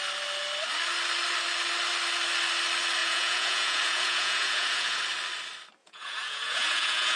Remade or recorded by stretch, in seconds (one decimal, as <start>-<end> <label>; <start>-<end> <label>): 0.0-3.0 recorded; 3.0-5.0 remade; 5.0-5.8 recorded; 5.8-7.2 remade